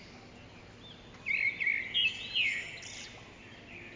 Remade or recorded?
recorded